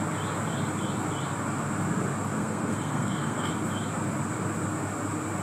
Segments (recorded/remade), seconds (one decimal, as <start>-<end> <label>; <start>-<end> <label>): 0.0-2.4 recorded; 2.4-3.5 remade; 3.5-5.4 recorded